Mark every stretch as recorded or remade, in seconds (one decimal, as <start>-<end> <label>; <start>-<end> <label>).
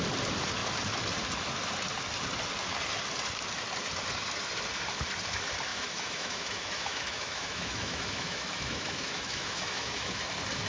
0.0-5.7 recorded; 5.7-10.2 remade; 10.2-10.7 recorded